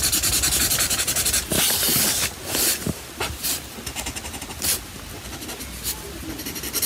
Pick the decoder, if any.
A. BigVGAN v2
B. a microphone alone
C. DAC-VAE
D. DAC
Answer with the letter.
B